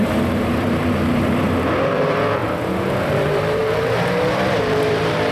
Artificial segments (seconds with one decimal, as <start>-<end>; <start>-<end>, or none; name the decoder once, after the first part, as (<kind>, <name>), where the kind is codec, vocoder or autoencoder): 0.0-2.4 (vocoder, BigVGAN v2); 2.9-5.3